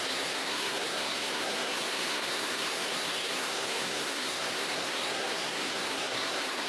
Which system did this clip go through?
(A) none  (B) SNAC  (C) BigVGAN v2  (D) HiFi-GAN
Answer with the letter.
B